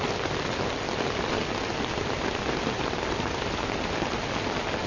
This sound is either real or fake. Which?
real